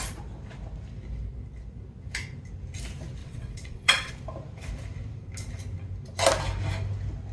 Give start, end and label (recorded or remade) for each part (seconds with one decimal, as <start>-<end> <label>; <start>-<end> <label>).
0.0-3.2 recorded; 3.2-4.1 remade; 4.1-7.3 recorded